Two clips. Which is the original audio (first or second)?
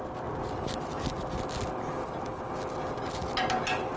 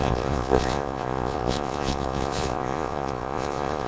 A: first